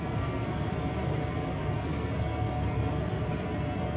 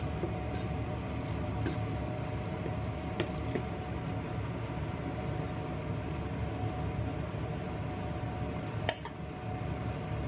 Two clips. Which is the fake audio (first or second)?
first